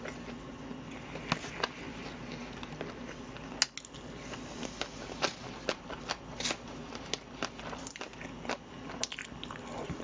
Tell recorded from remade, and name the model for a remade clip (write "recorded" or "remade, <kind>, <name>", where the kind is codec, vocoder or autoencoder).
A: recorded